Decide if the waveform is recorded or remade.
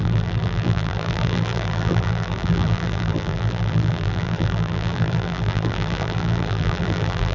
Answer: remade